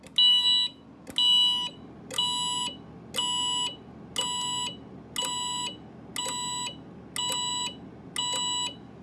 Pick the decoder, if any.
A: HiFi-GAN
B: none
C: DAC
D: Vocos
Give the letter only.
B